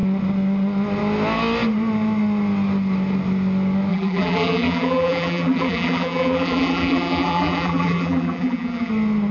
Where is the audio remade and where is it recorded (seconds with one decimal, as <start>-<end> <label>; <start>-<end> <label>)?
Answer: 0.0-3.9 recorded; 3.9-8.9 remade; 8.9-9.3 recorded